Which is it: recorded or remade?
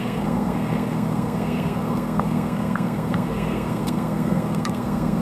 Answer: remade